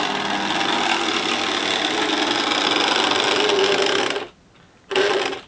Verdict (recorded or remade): recorded